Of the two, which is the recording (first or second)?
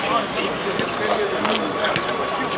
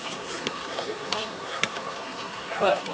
first